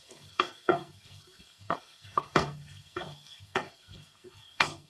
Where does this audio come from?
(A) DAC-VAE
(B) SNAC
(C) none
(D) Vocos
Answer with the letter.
B